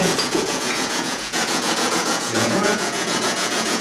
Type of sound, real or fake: fake